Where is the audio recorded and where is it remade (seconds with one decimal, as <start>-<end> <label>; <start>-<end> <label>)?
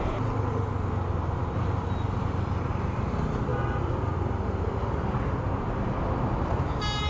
0.0-7.1 recorded